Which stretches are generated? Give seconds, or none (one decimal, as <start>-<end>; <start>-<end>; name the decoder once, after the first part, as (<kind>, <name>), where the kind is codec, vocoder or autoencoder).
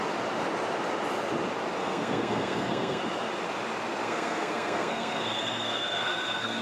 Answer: 1.8-3.0 (codec, SNAC); 4.0-6.6